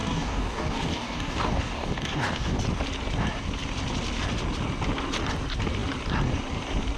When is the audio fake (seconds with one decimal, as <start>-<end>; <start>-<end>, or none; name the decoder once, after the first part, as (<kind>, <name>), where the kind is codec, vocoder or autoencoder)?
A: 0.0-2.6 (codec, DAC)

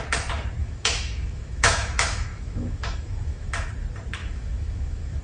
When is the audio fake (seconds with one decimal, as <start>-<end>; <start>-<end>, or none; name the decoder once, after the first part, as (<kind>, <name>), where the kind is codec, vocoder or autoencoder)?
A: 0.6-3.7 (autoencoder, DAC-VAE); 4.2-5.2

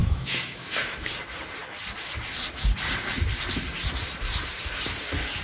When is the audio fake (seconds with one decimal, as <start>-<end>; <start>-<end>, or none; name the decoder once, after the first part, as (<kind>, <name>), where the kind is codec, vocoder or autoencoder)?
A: 0.0-1.1 (autoencoder, DAC-VAE)

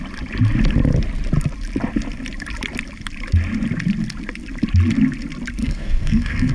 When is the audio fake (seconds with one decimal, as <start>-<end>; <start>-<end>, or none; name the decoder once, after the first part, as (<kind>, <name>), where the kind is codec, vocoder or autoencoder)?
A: 5.6-6.5 (codec, SNAC)

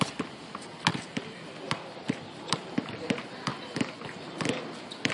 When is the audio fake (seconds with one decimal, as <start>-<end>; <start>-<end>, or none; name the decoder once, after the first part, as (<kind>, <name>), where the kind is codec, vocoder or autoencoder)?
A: 0.9-2.6 (vocoder, BigVGAN v2)